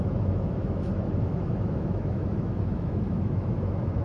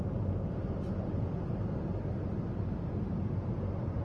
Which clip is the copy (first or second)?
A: first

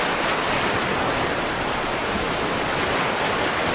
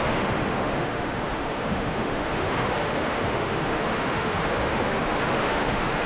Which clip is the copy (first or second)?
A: second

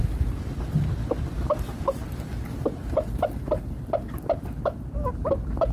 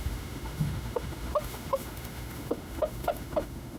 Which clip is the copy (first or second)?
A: second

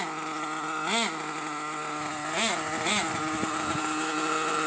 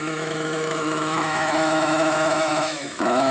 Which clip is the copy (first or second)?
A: second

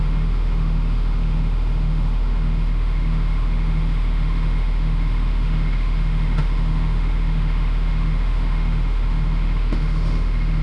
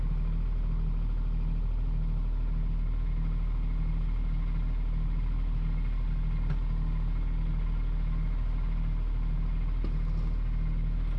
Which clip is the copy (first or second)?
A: first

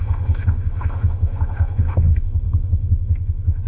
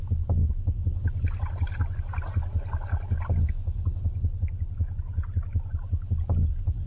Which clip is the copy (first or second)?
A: first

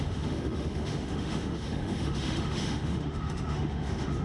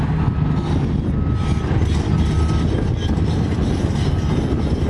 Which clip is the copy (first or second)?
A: first